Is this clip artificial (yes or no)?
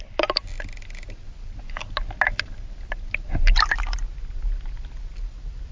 no